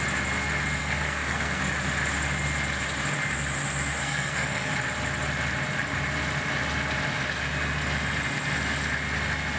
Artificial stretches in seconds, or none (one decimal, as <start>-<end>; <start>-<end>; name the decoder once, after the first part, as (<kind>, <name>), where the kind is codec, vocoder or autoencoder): 0.8-1.6 (codec, SNAC); 4.0-4.7